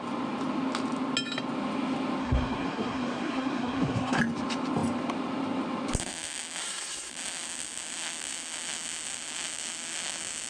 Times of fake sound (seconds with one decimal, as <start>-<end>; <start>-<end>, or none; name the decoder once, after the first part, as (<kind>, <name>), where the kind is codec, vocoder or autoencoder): 2.2-4.2 (codec, SNAC); 6.6-7.1